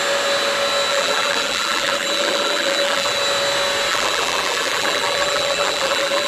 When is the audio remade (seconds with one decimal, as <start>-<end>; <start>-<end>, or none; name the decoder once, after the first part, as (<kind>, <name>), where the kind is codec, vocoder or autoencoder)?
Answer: 0.9-3.2 (vocoder, BigVGAN v2); 3.9-6.3